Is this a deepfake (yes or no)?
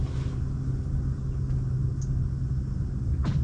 no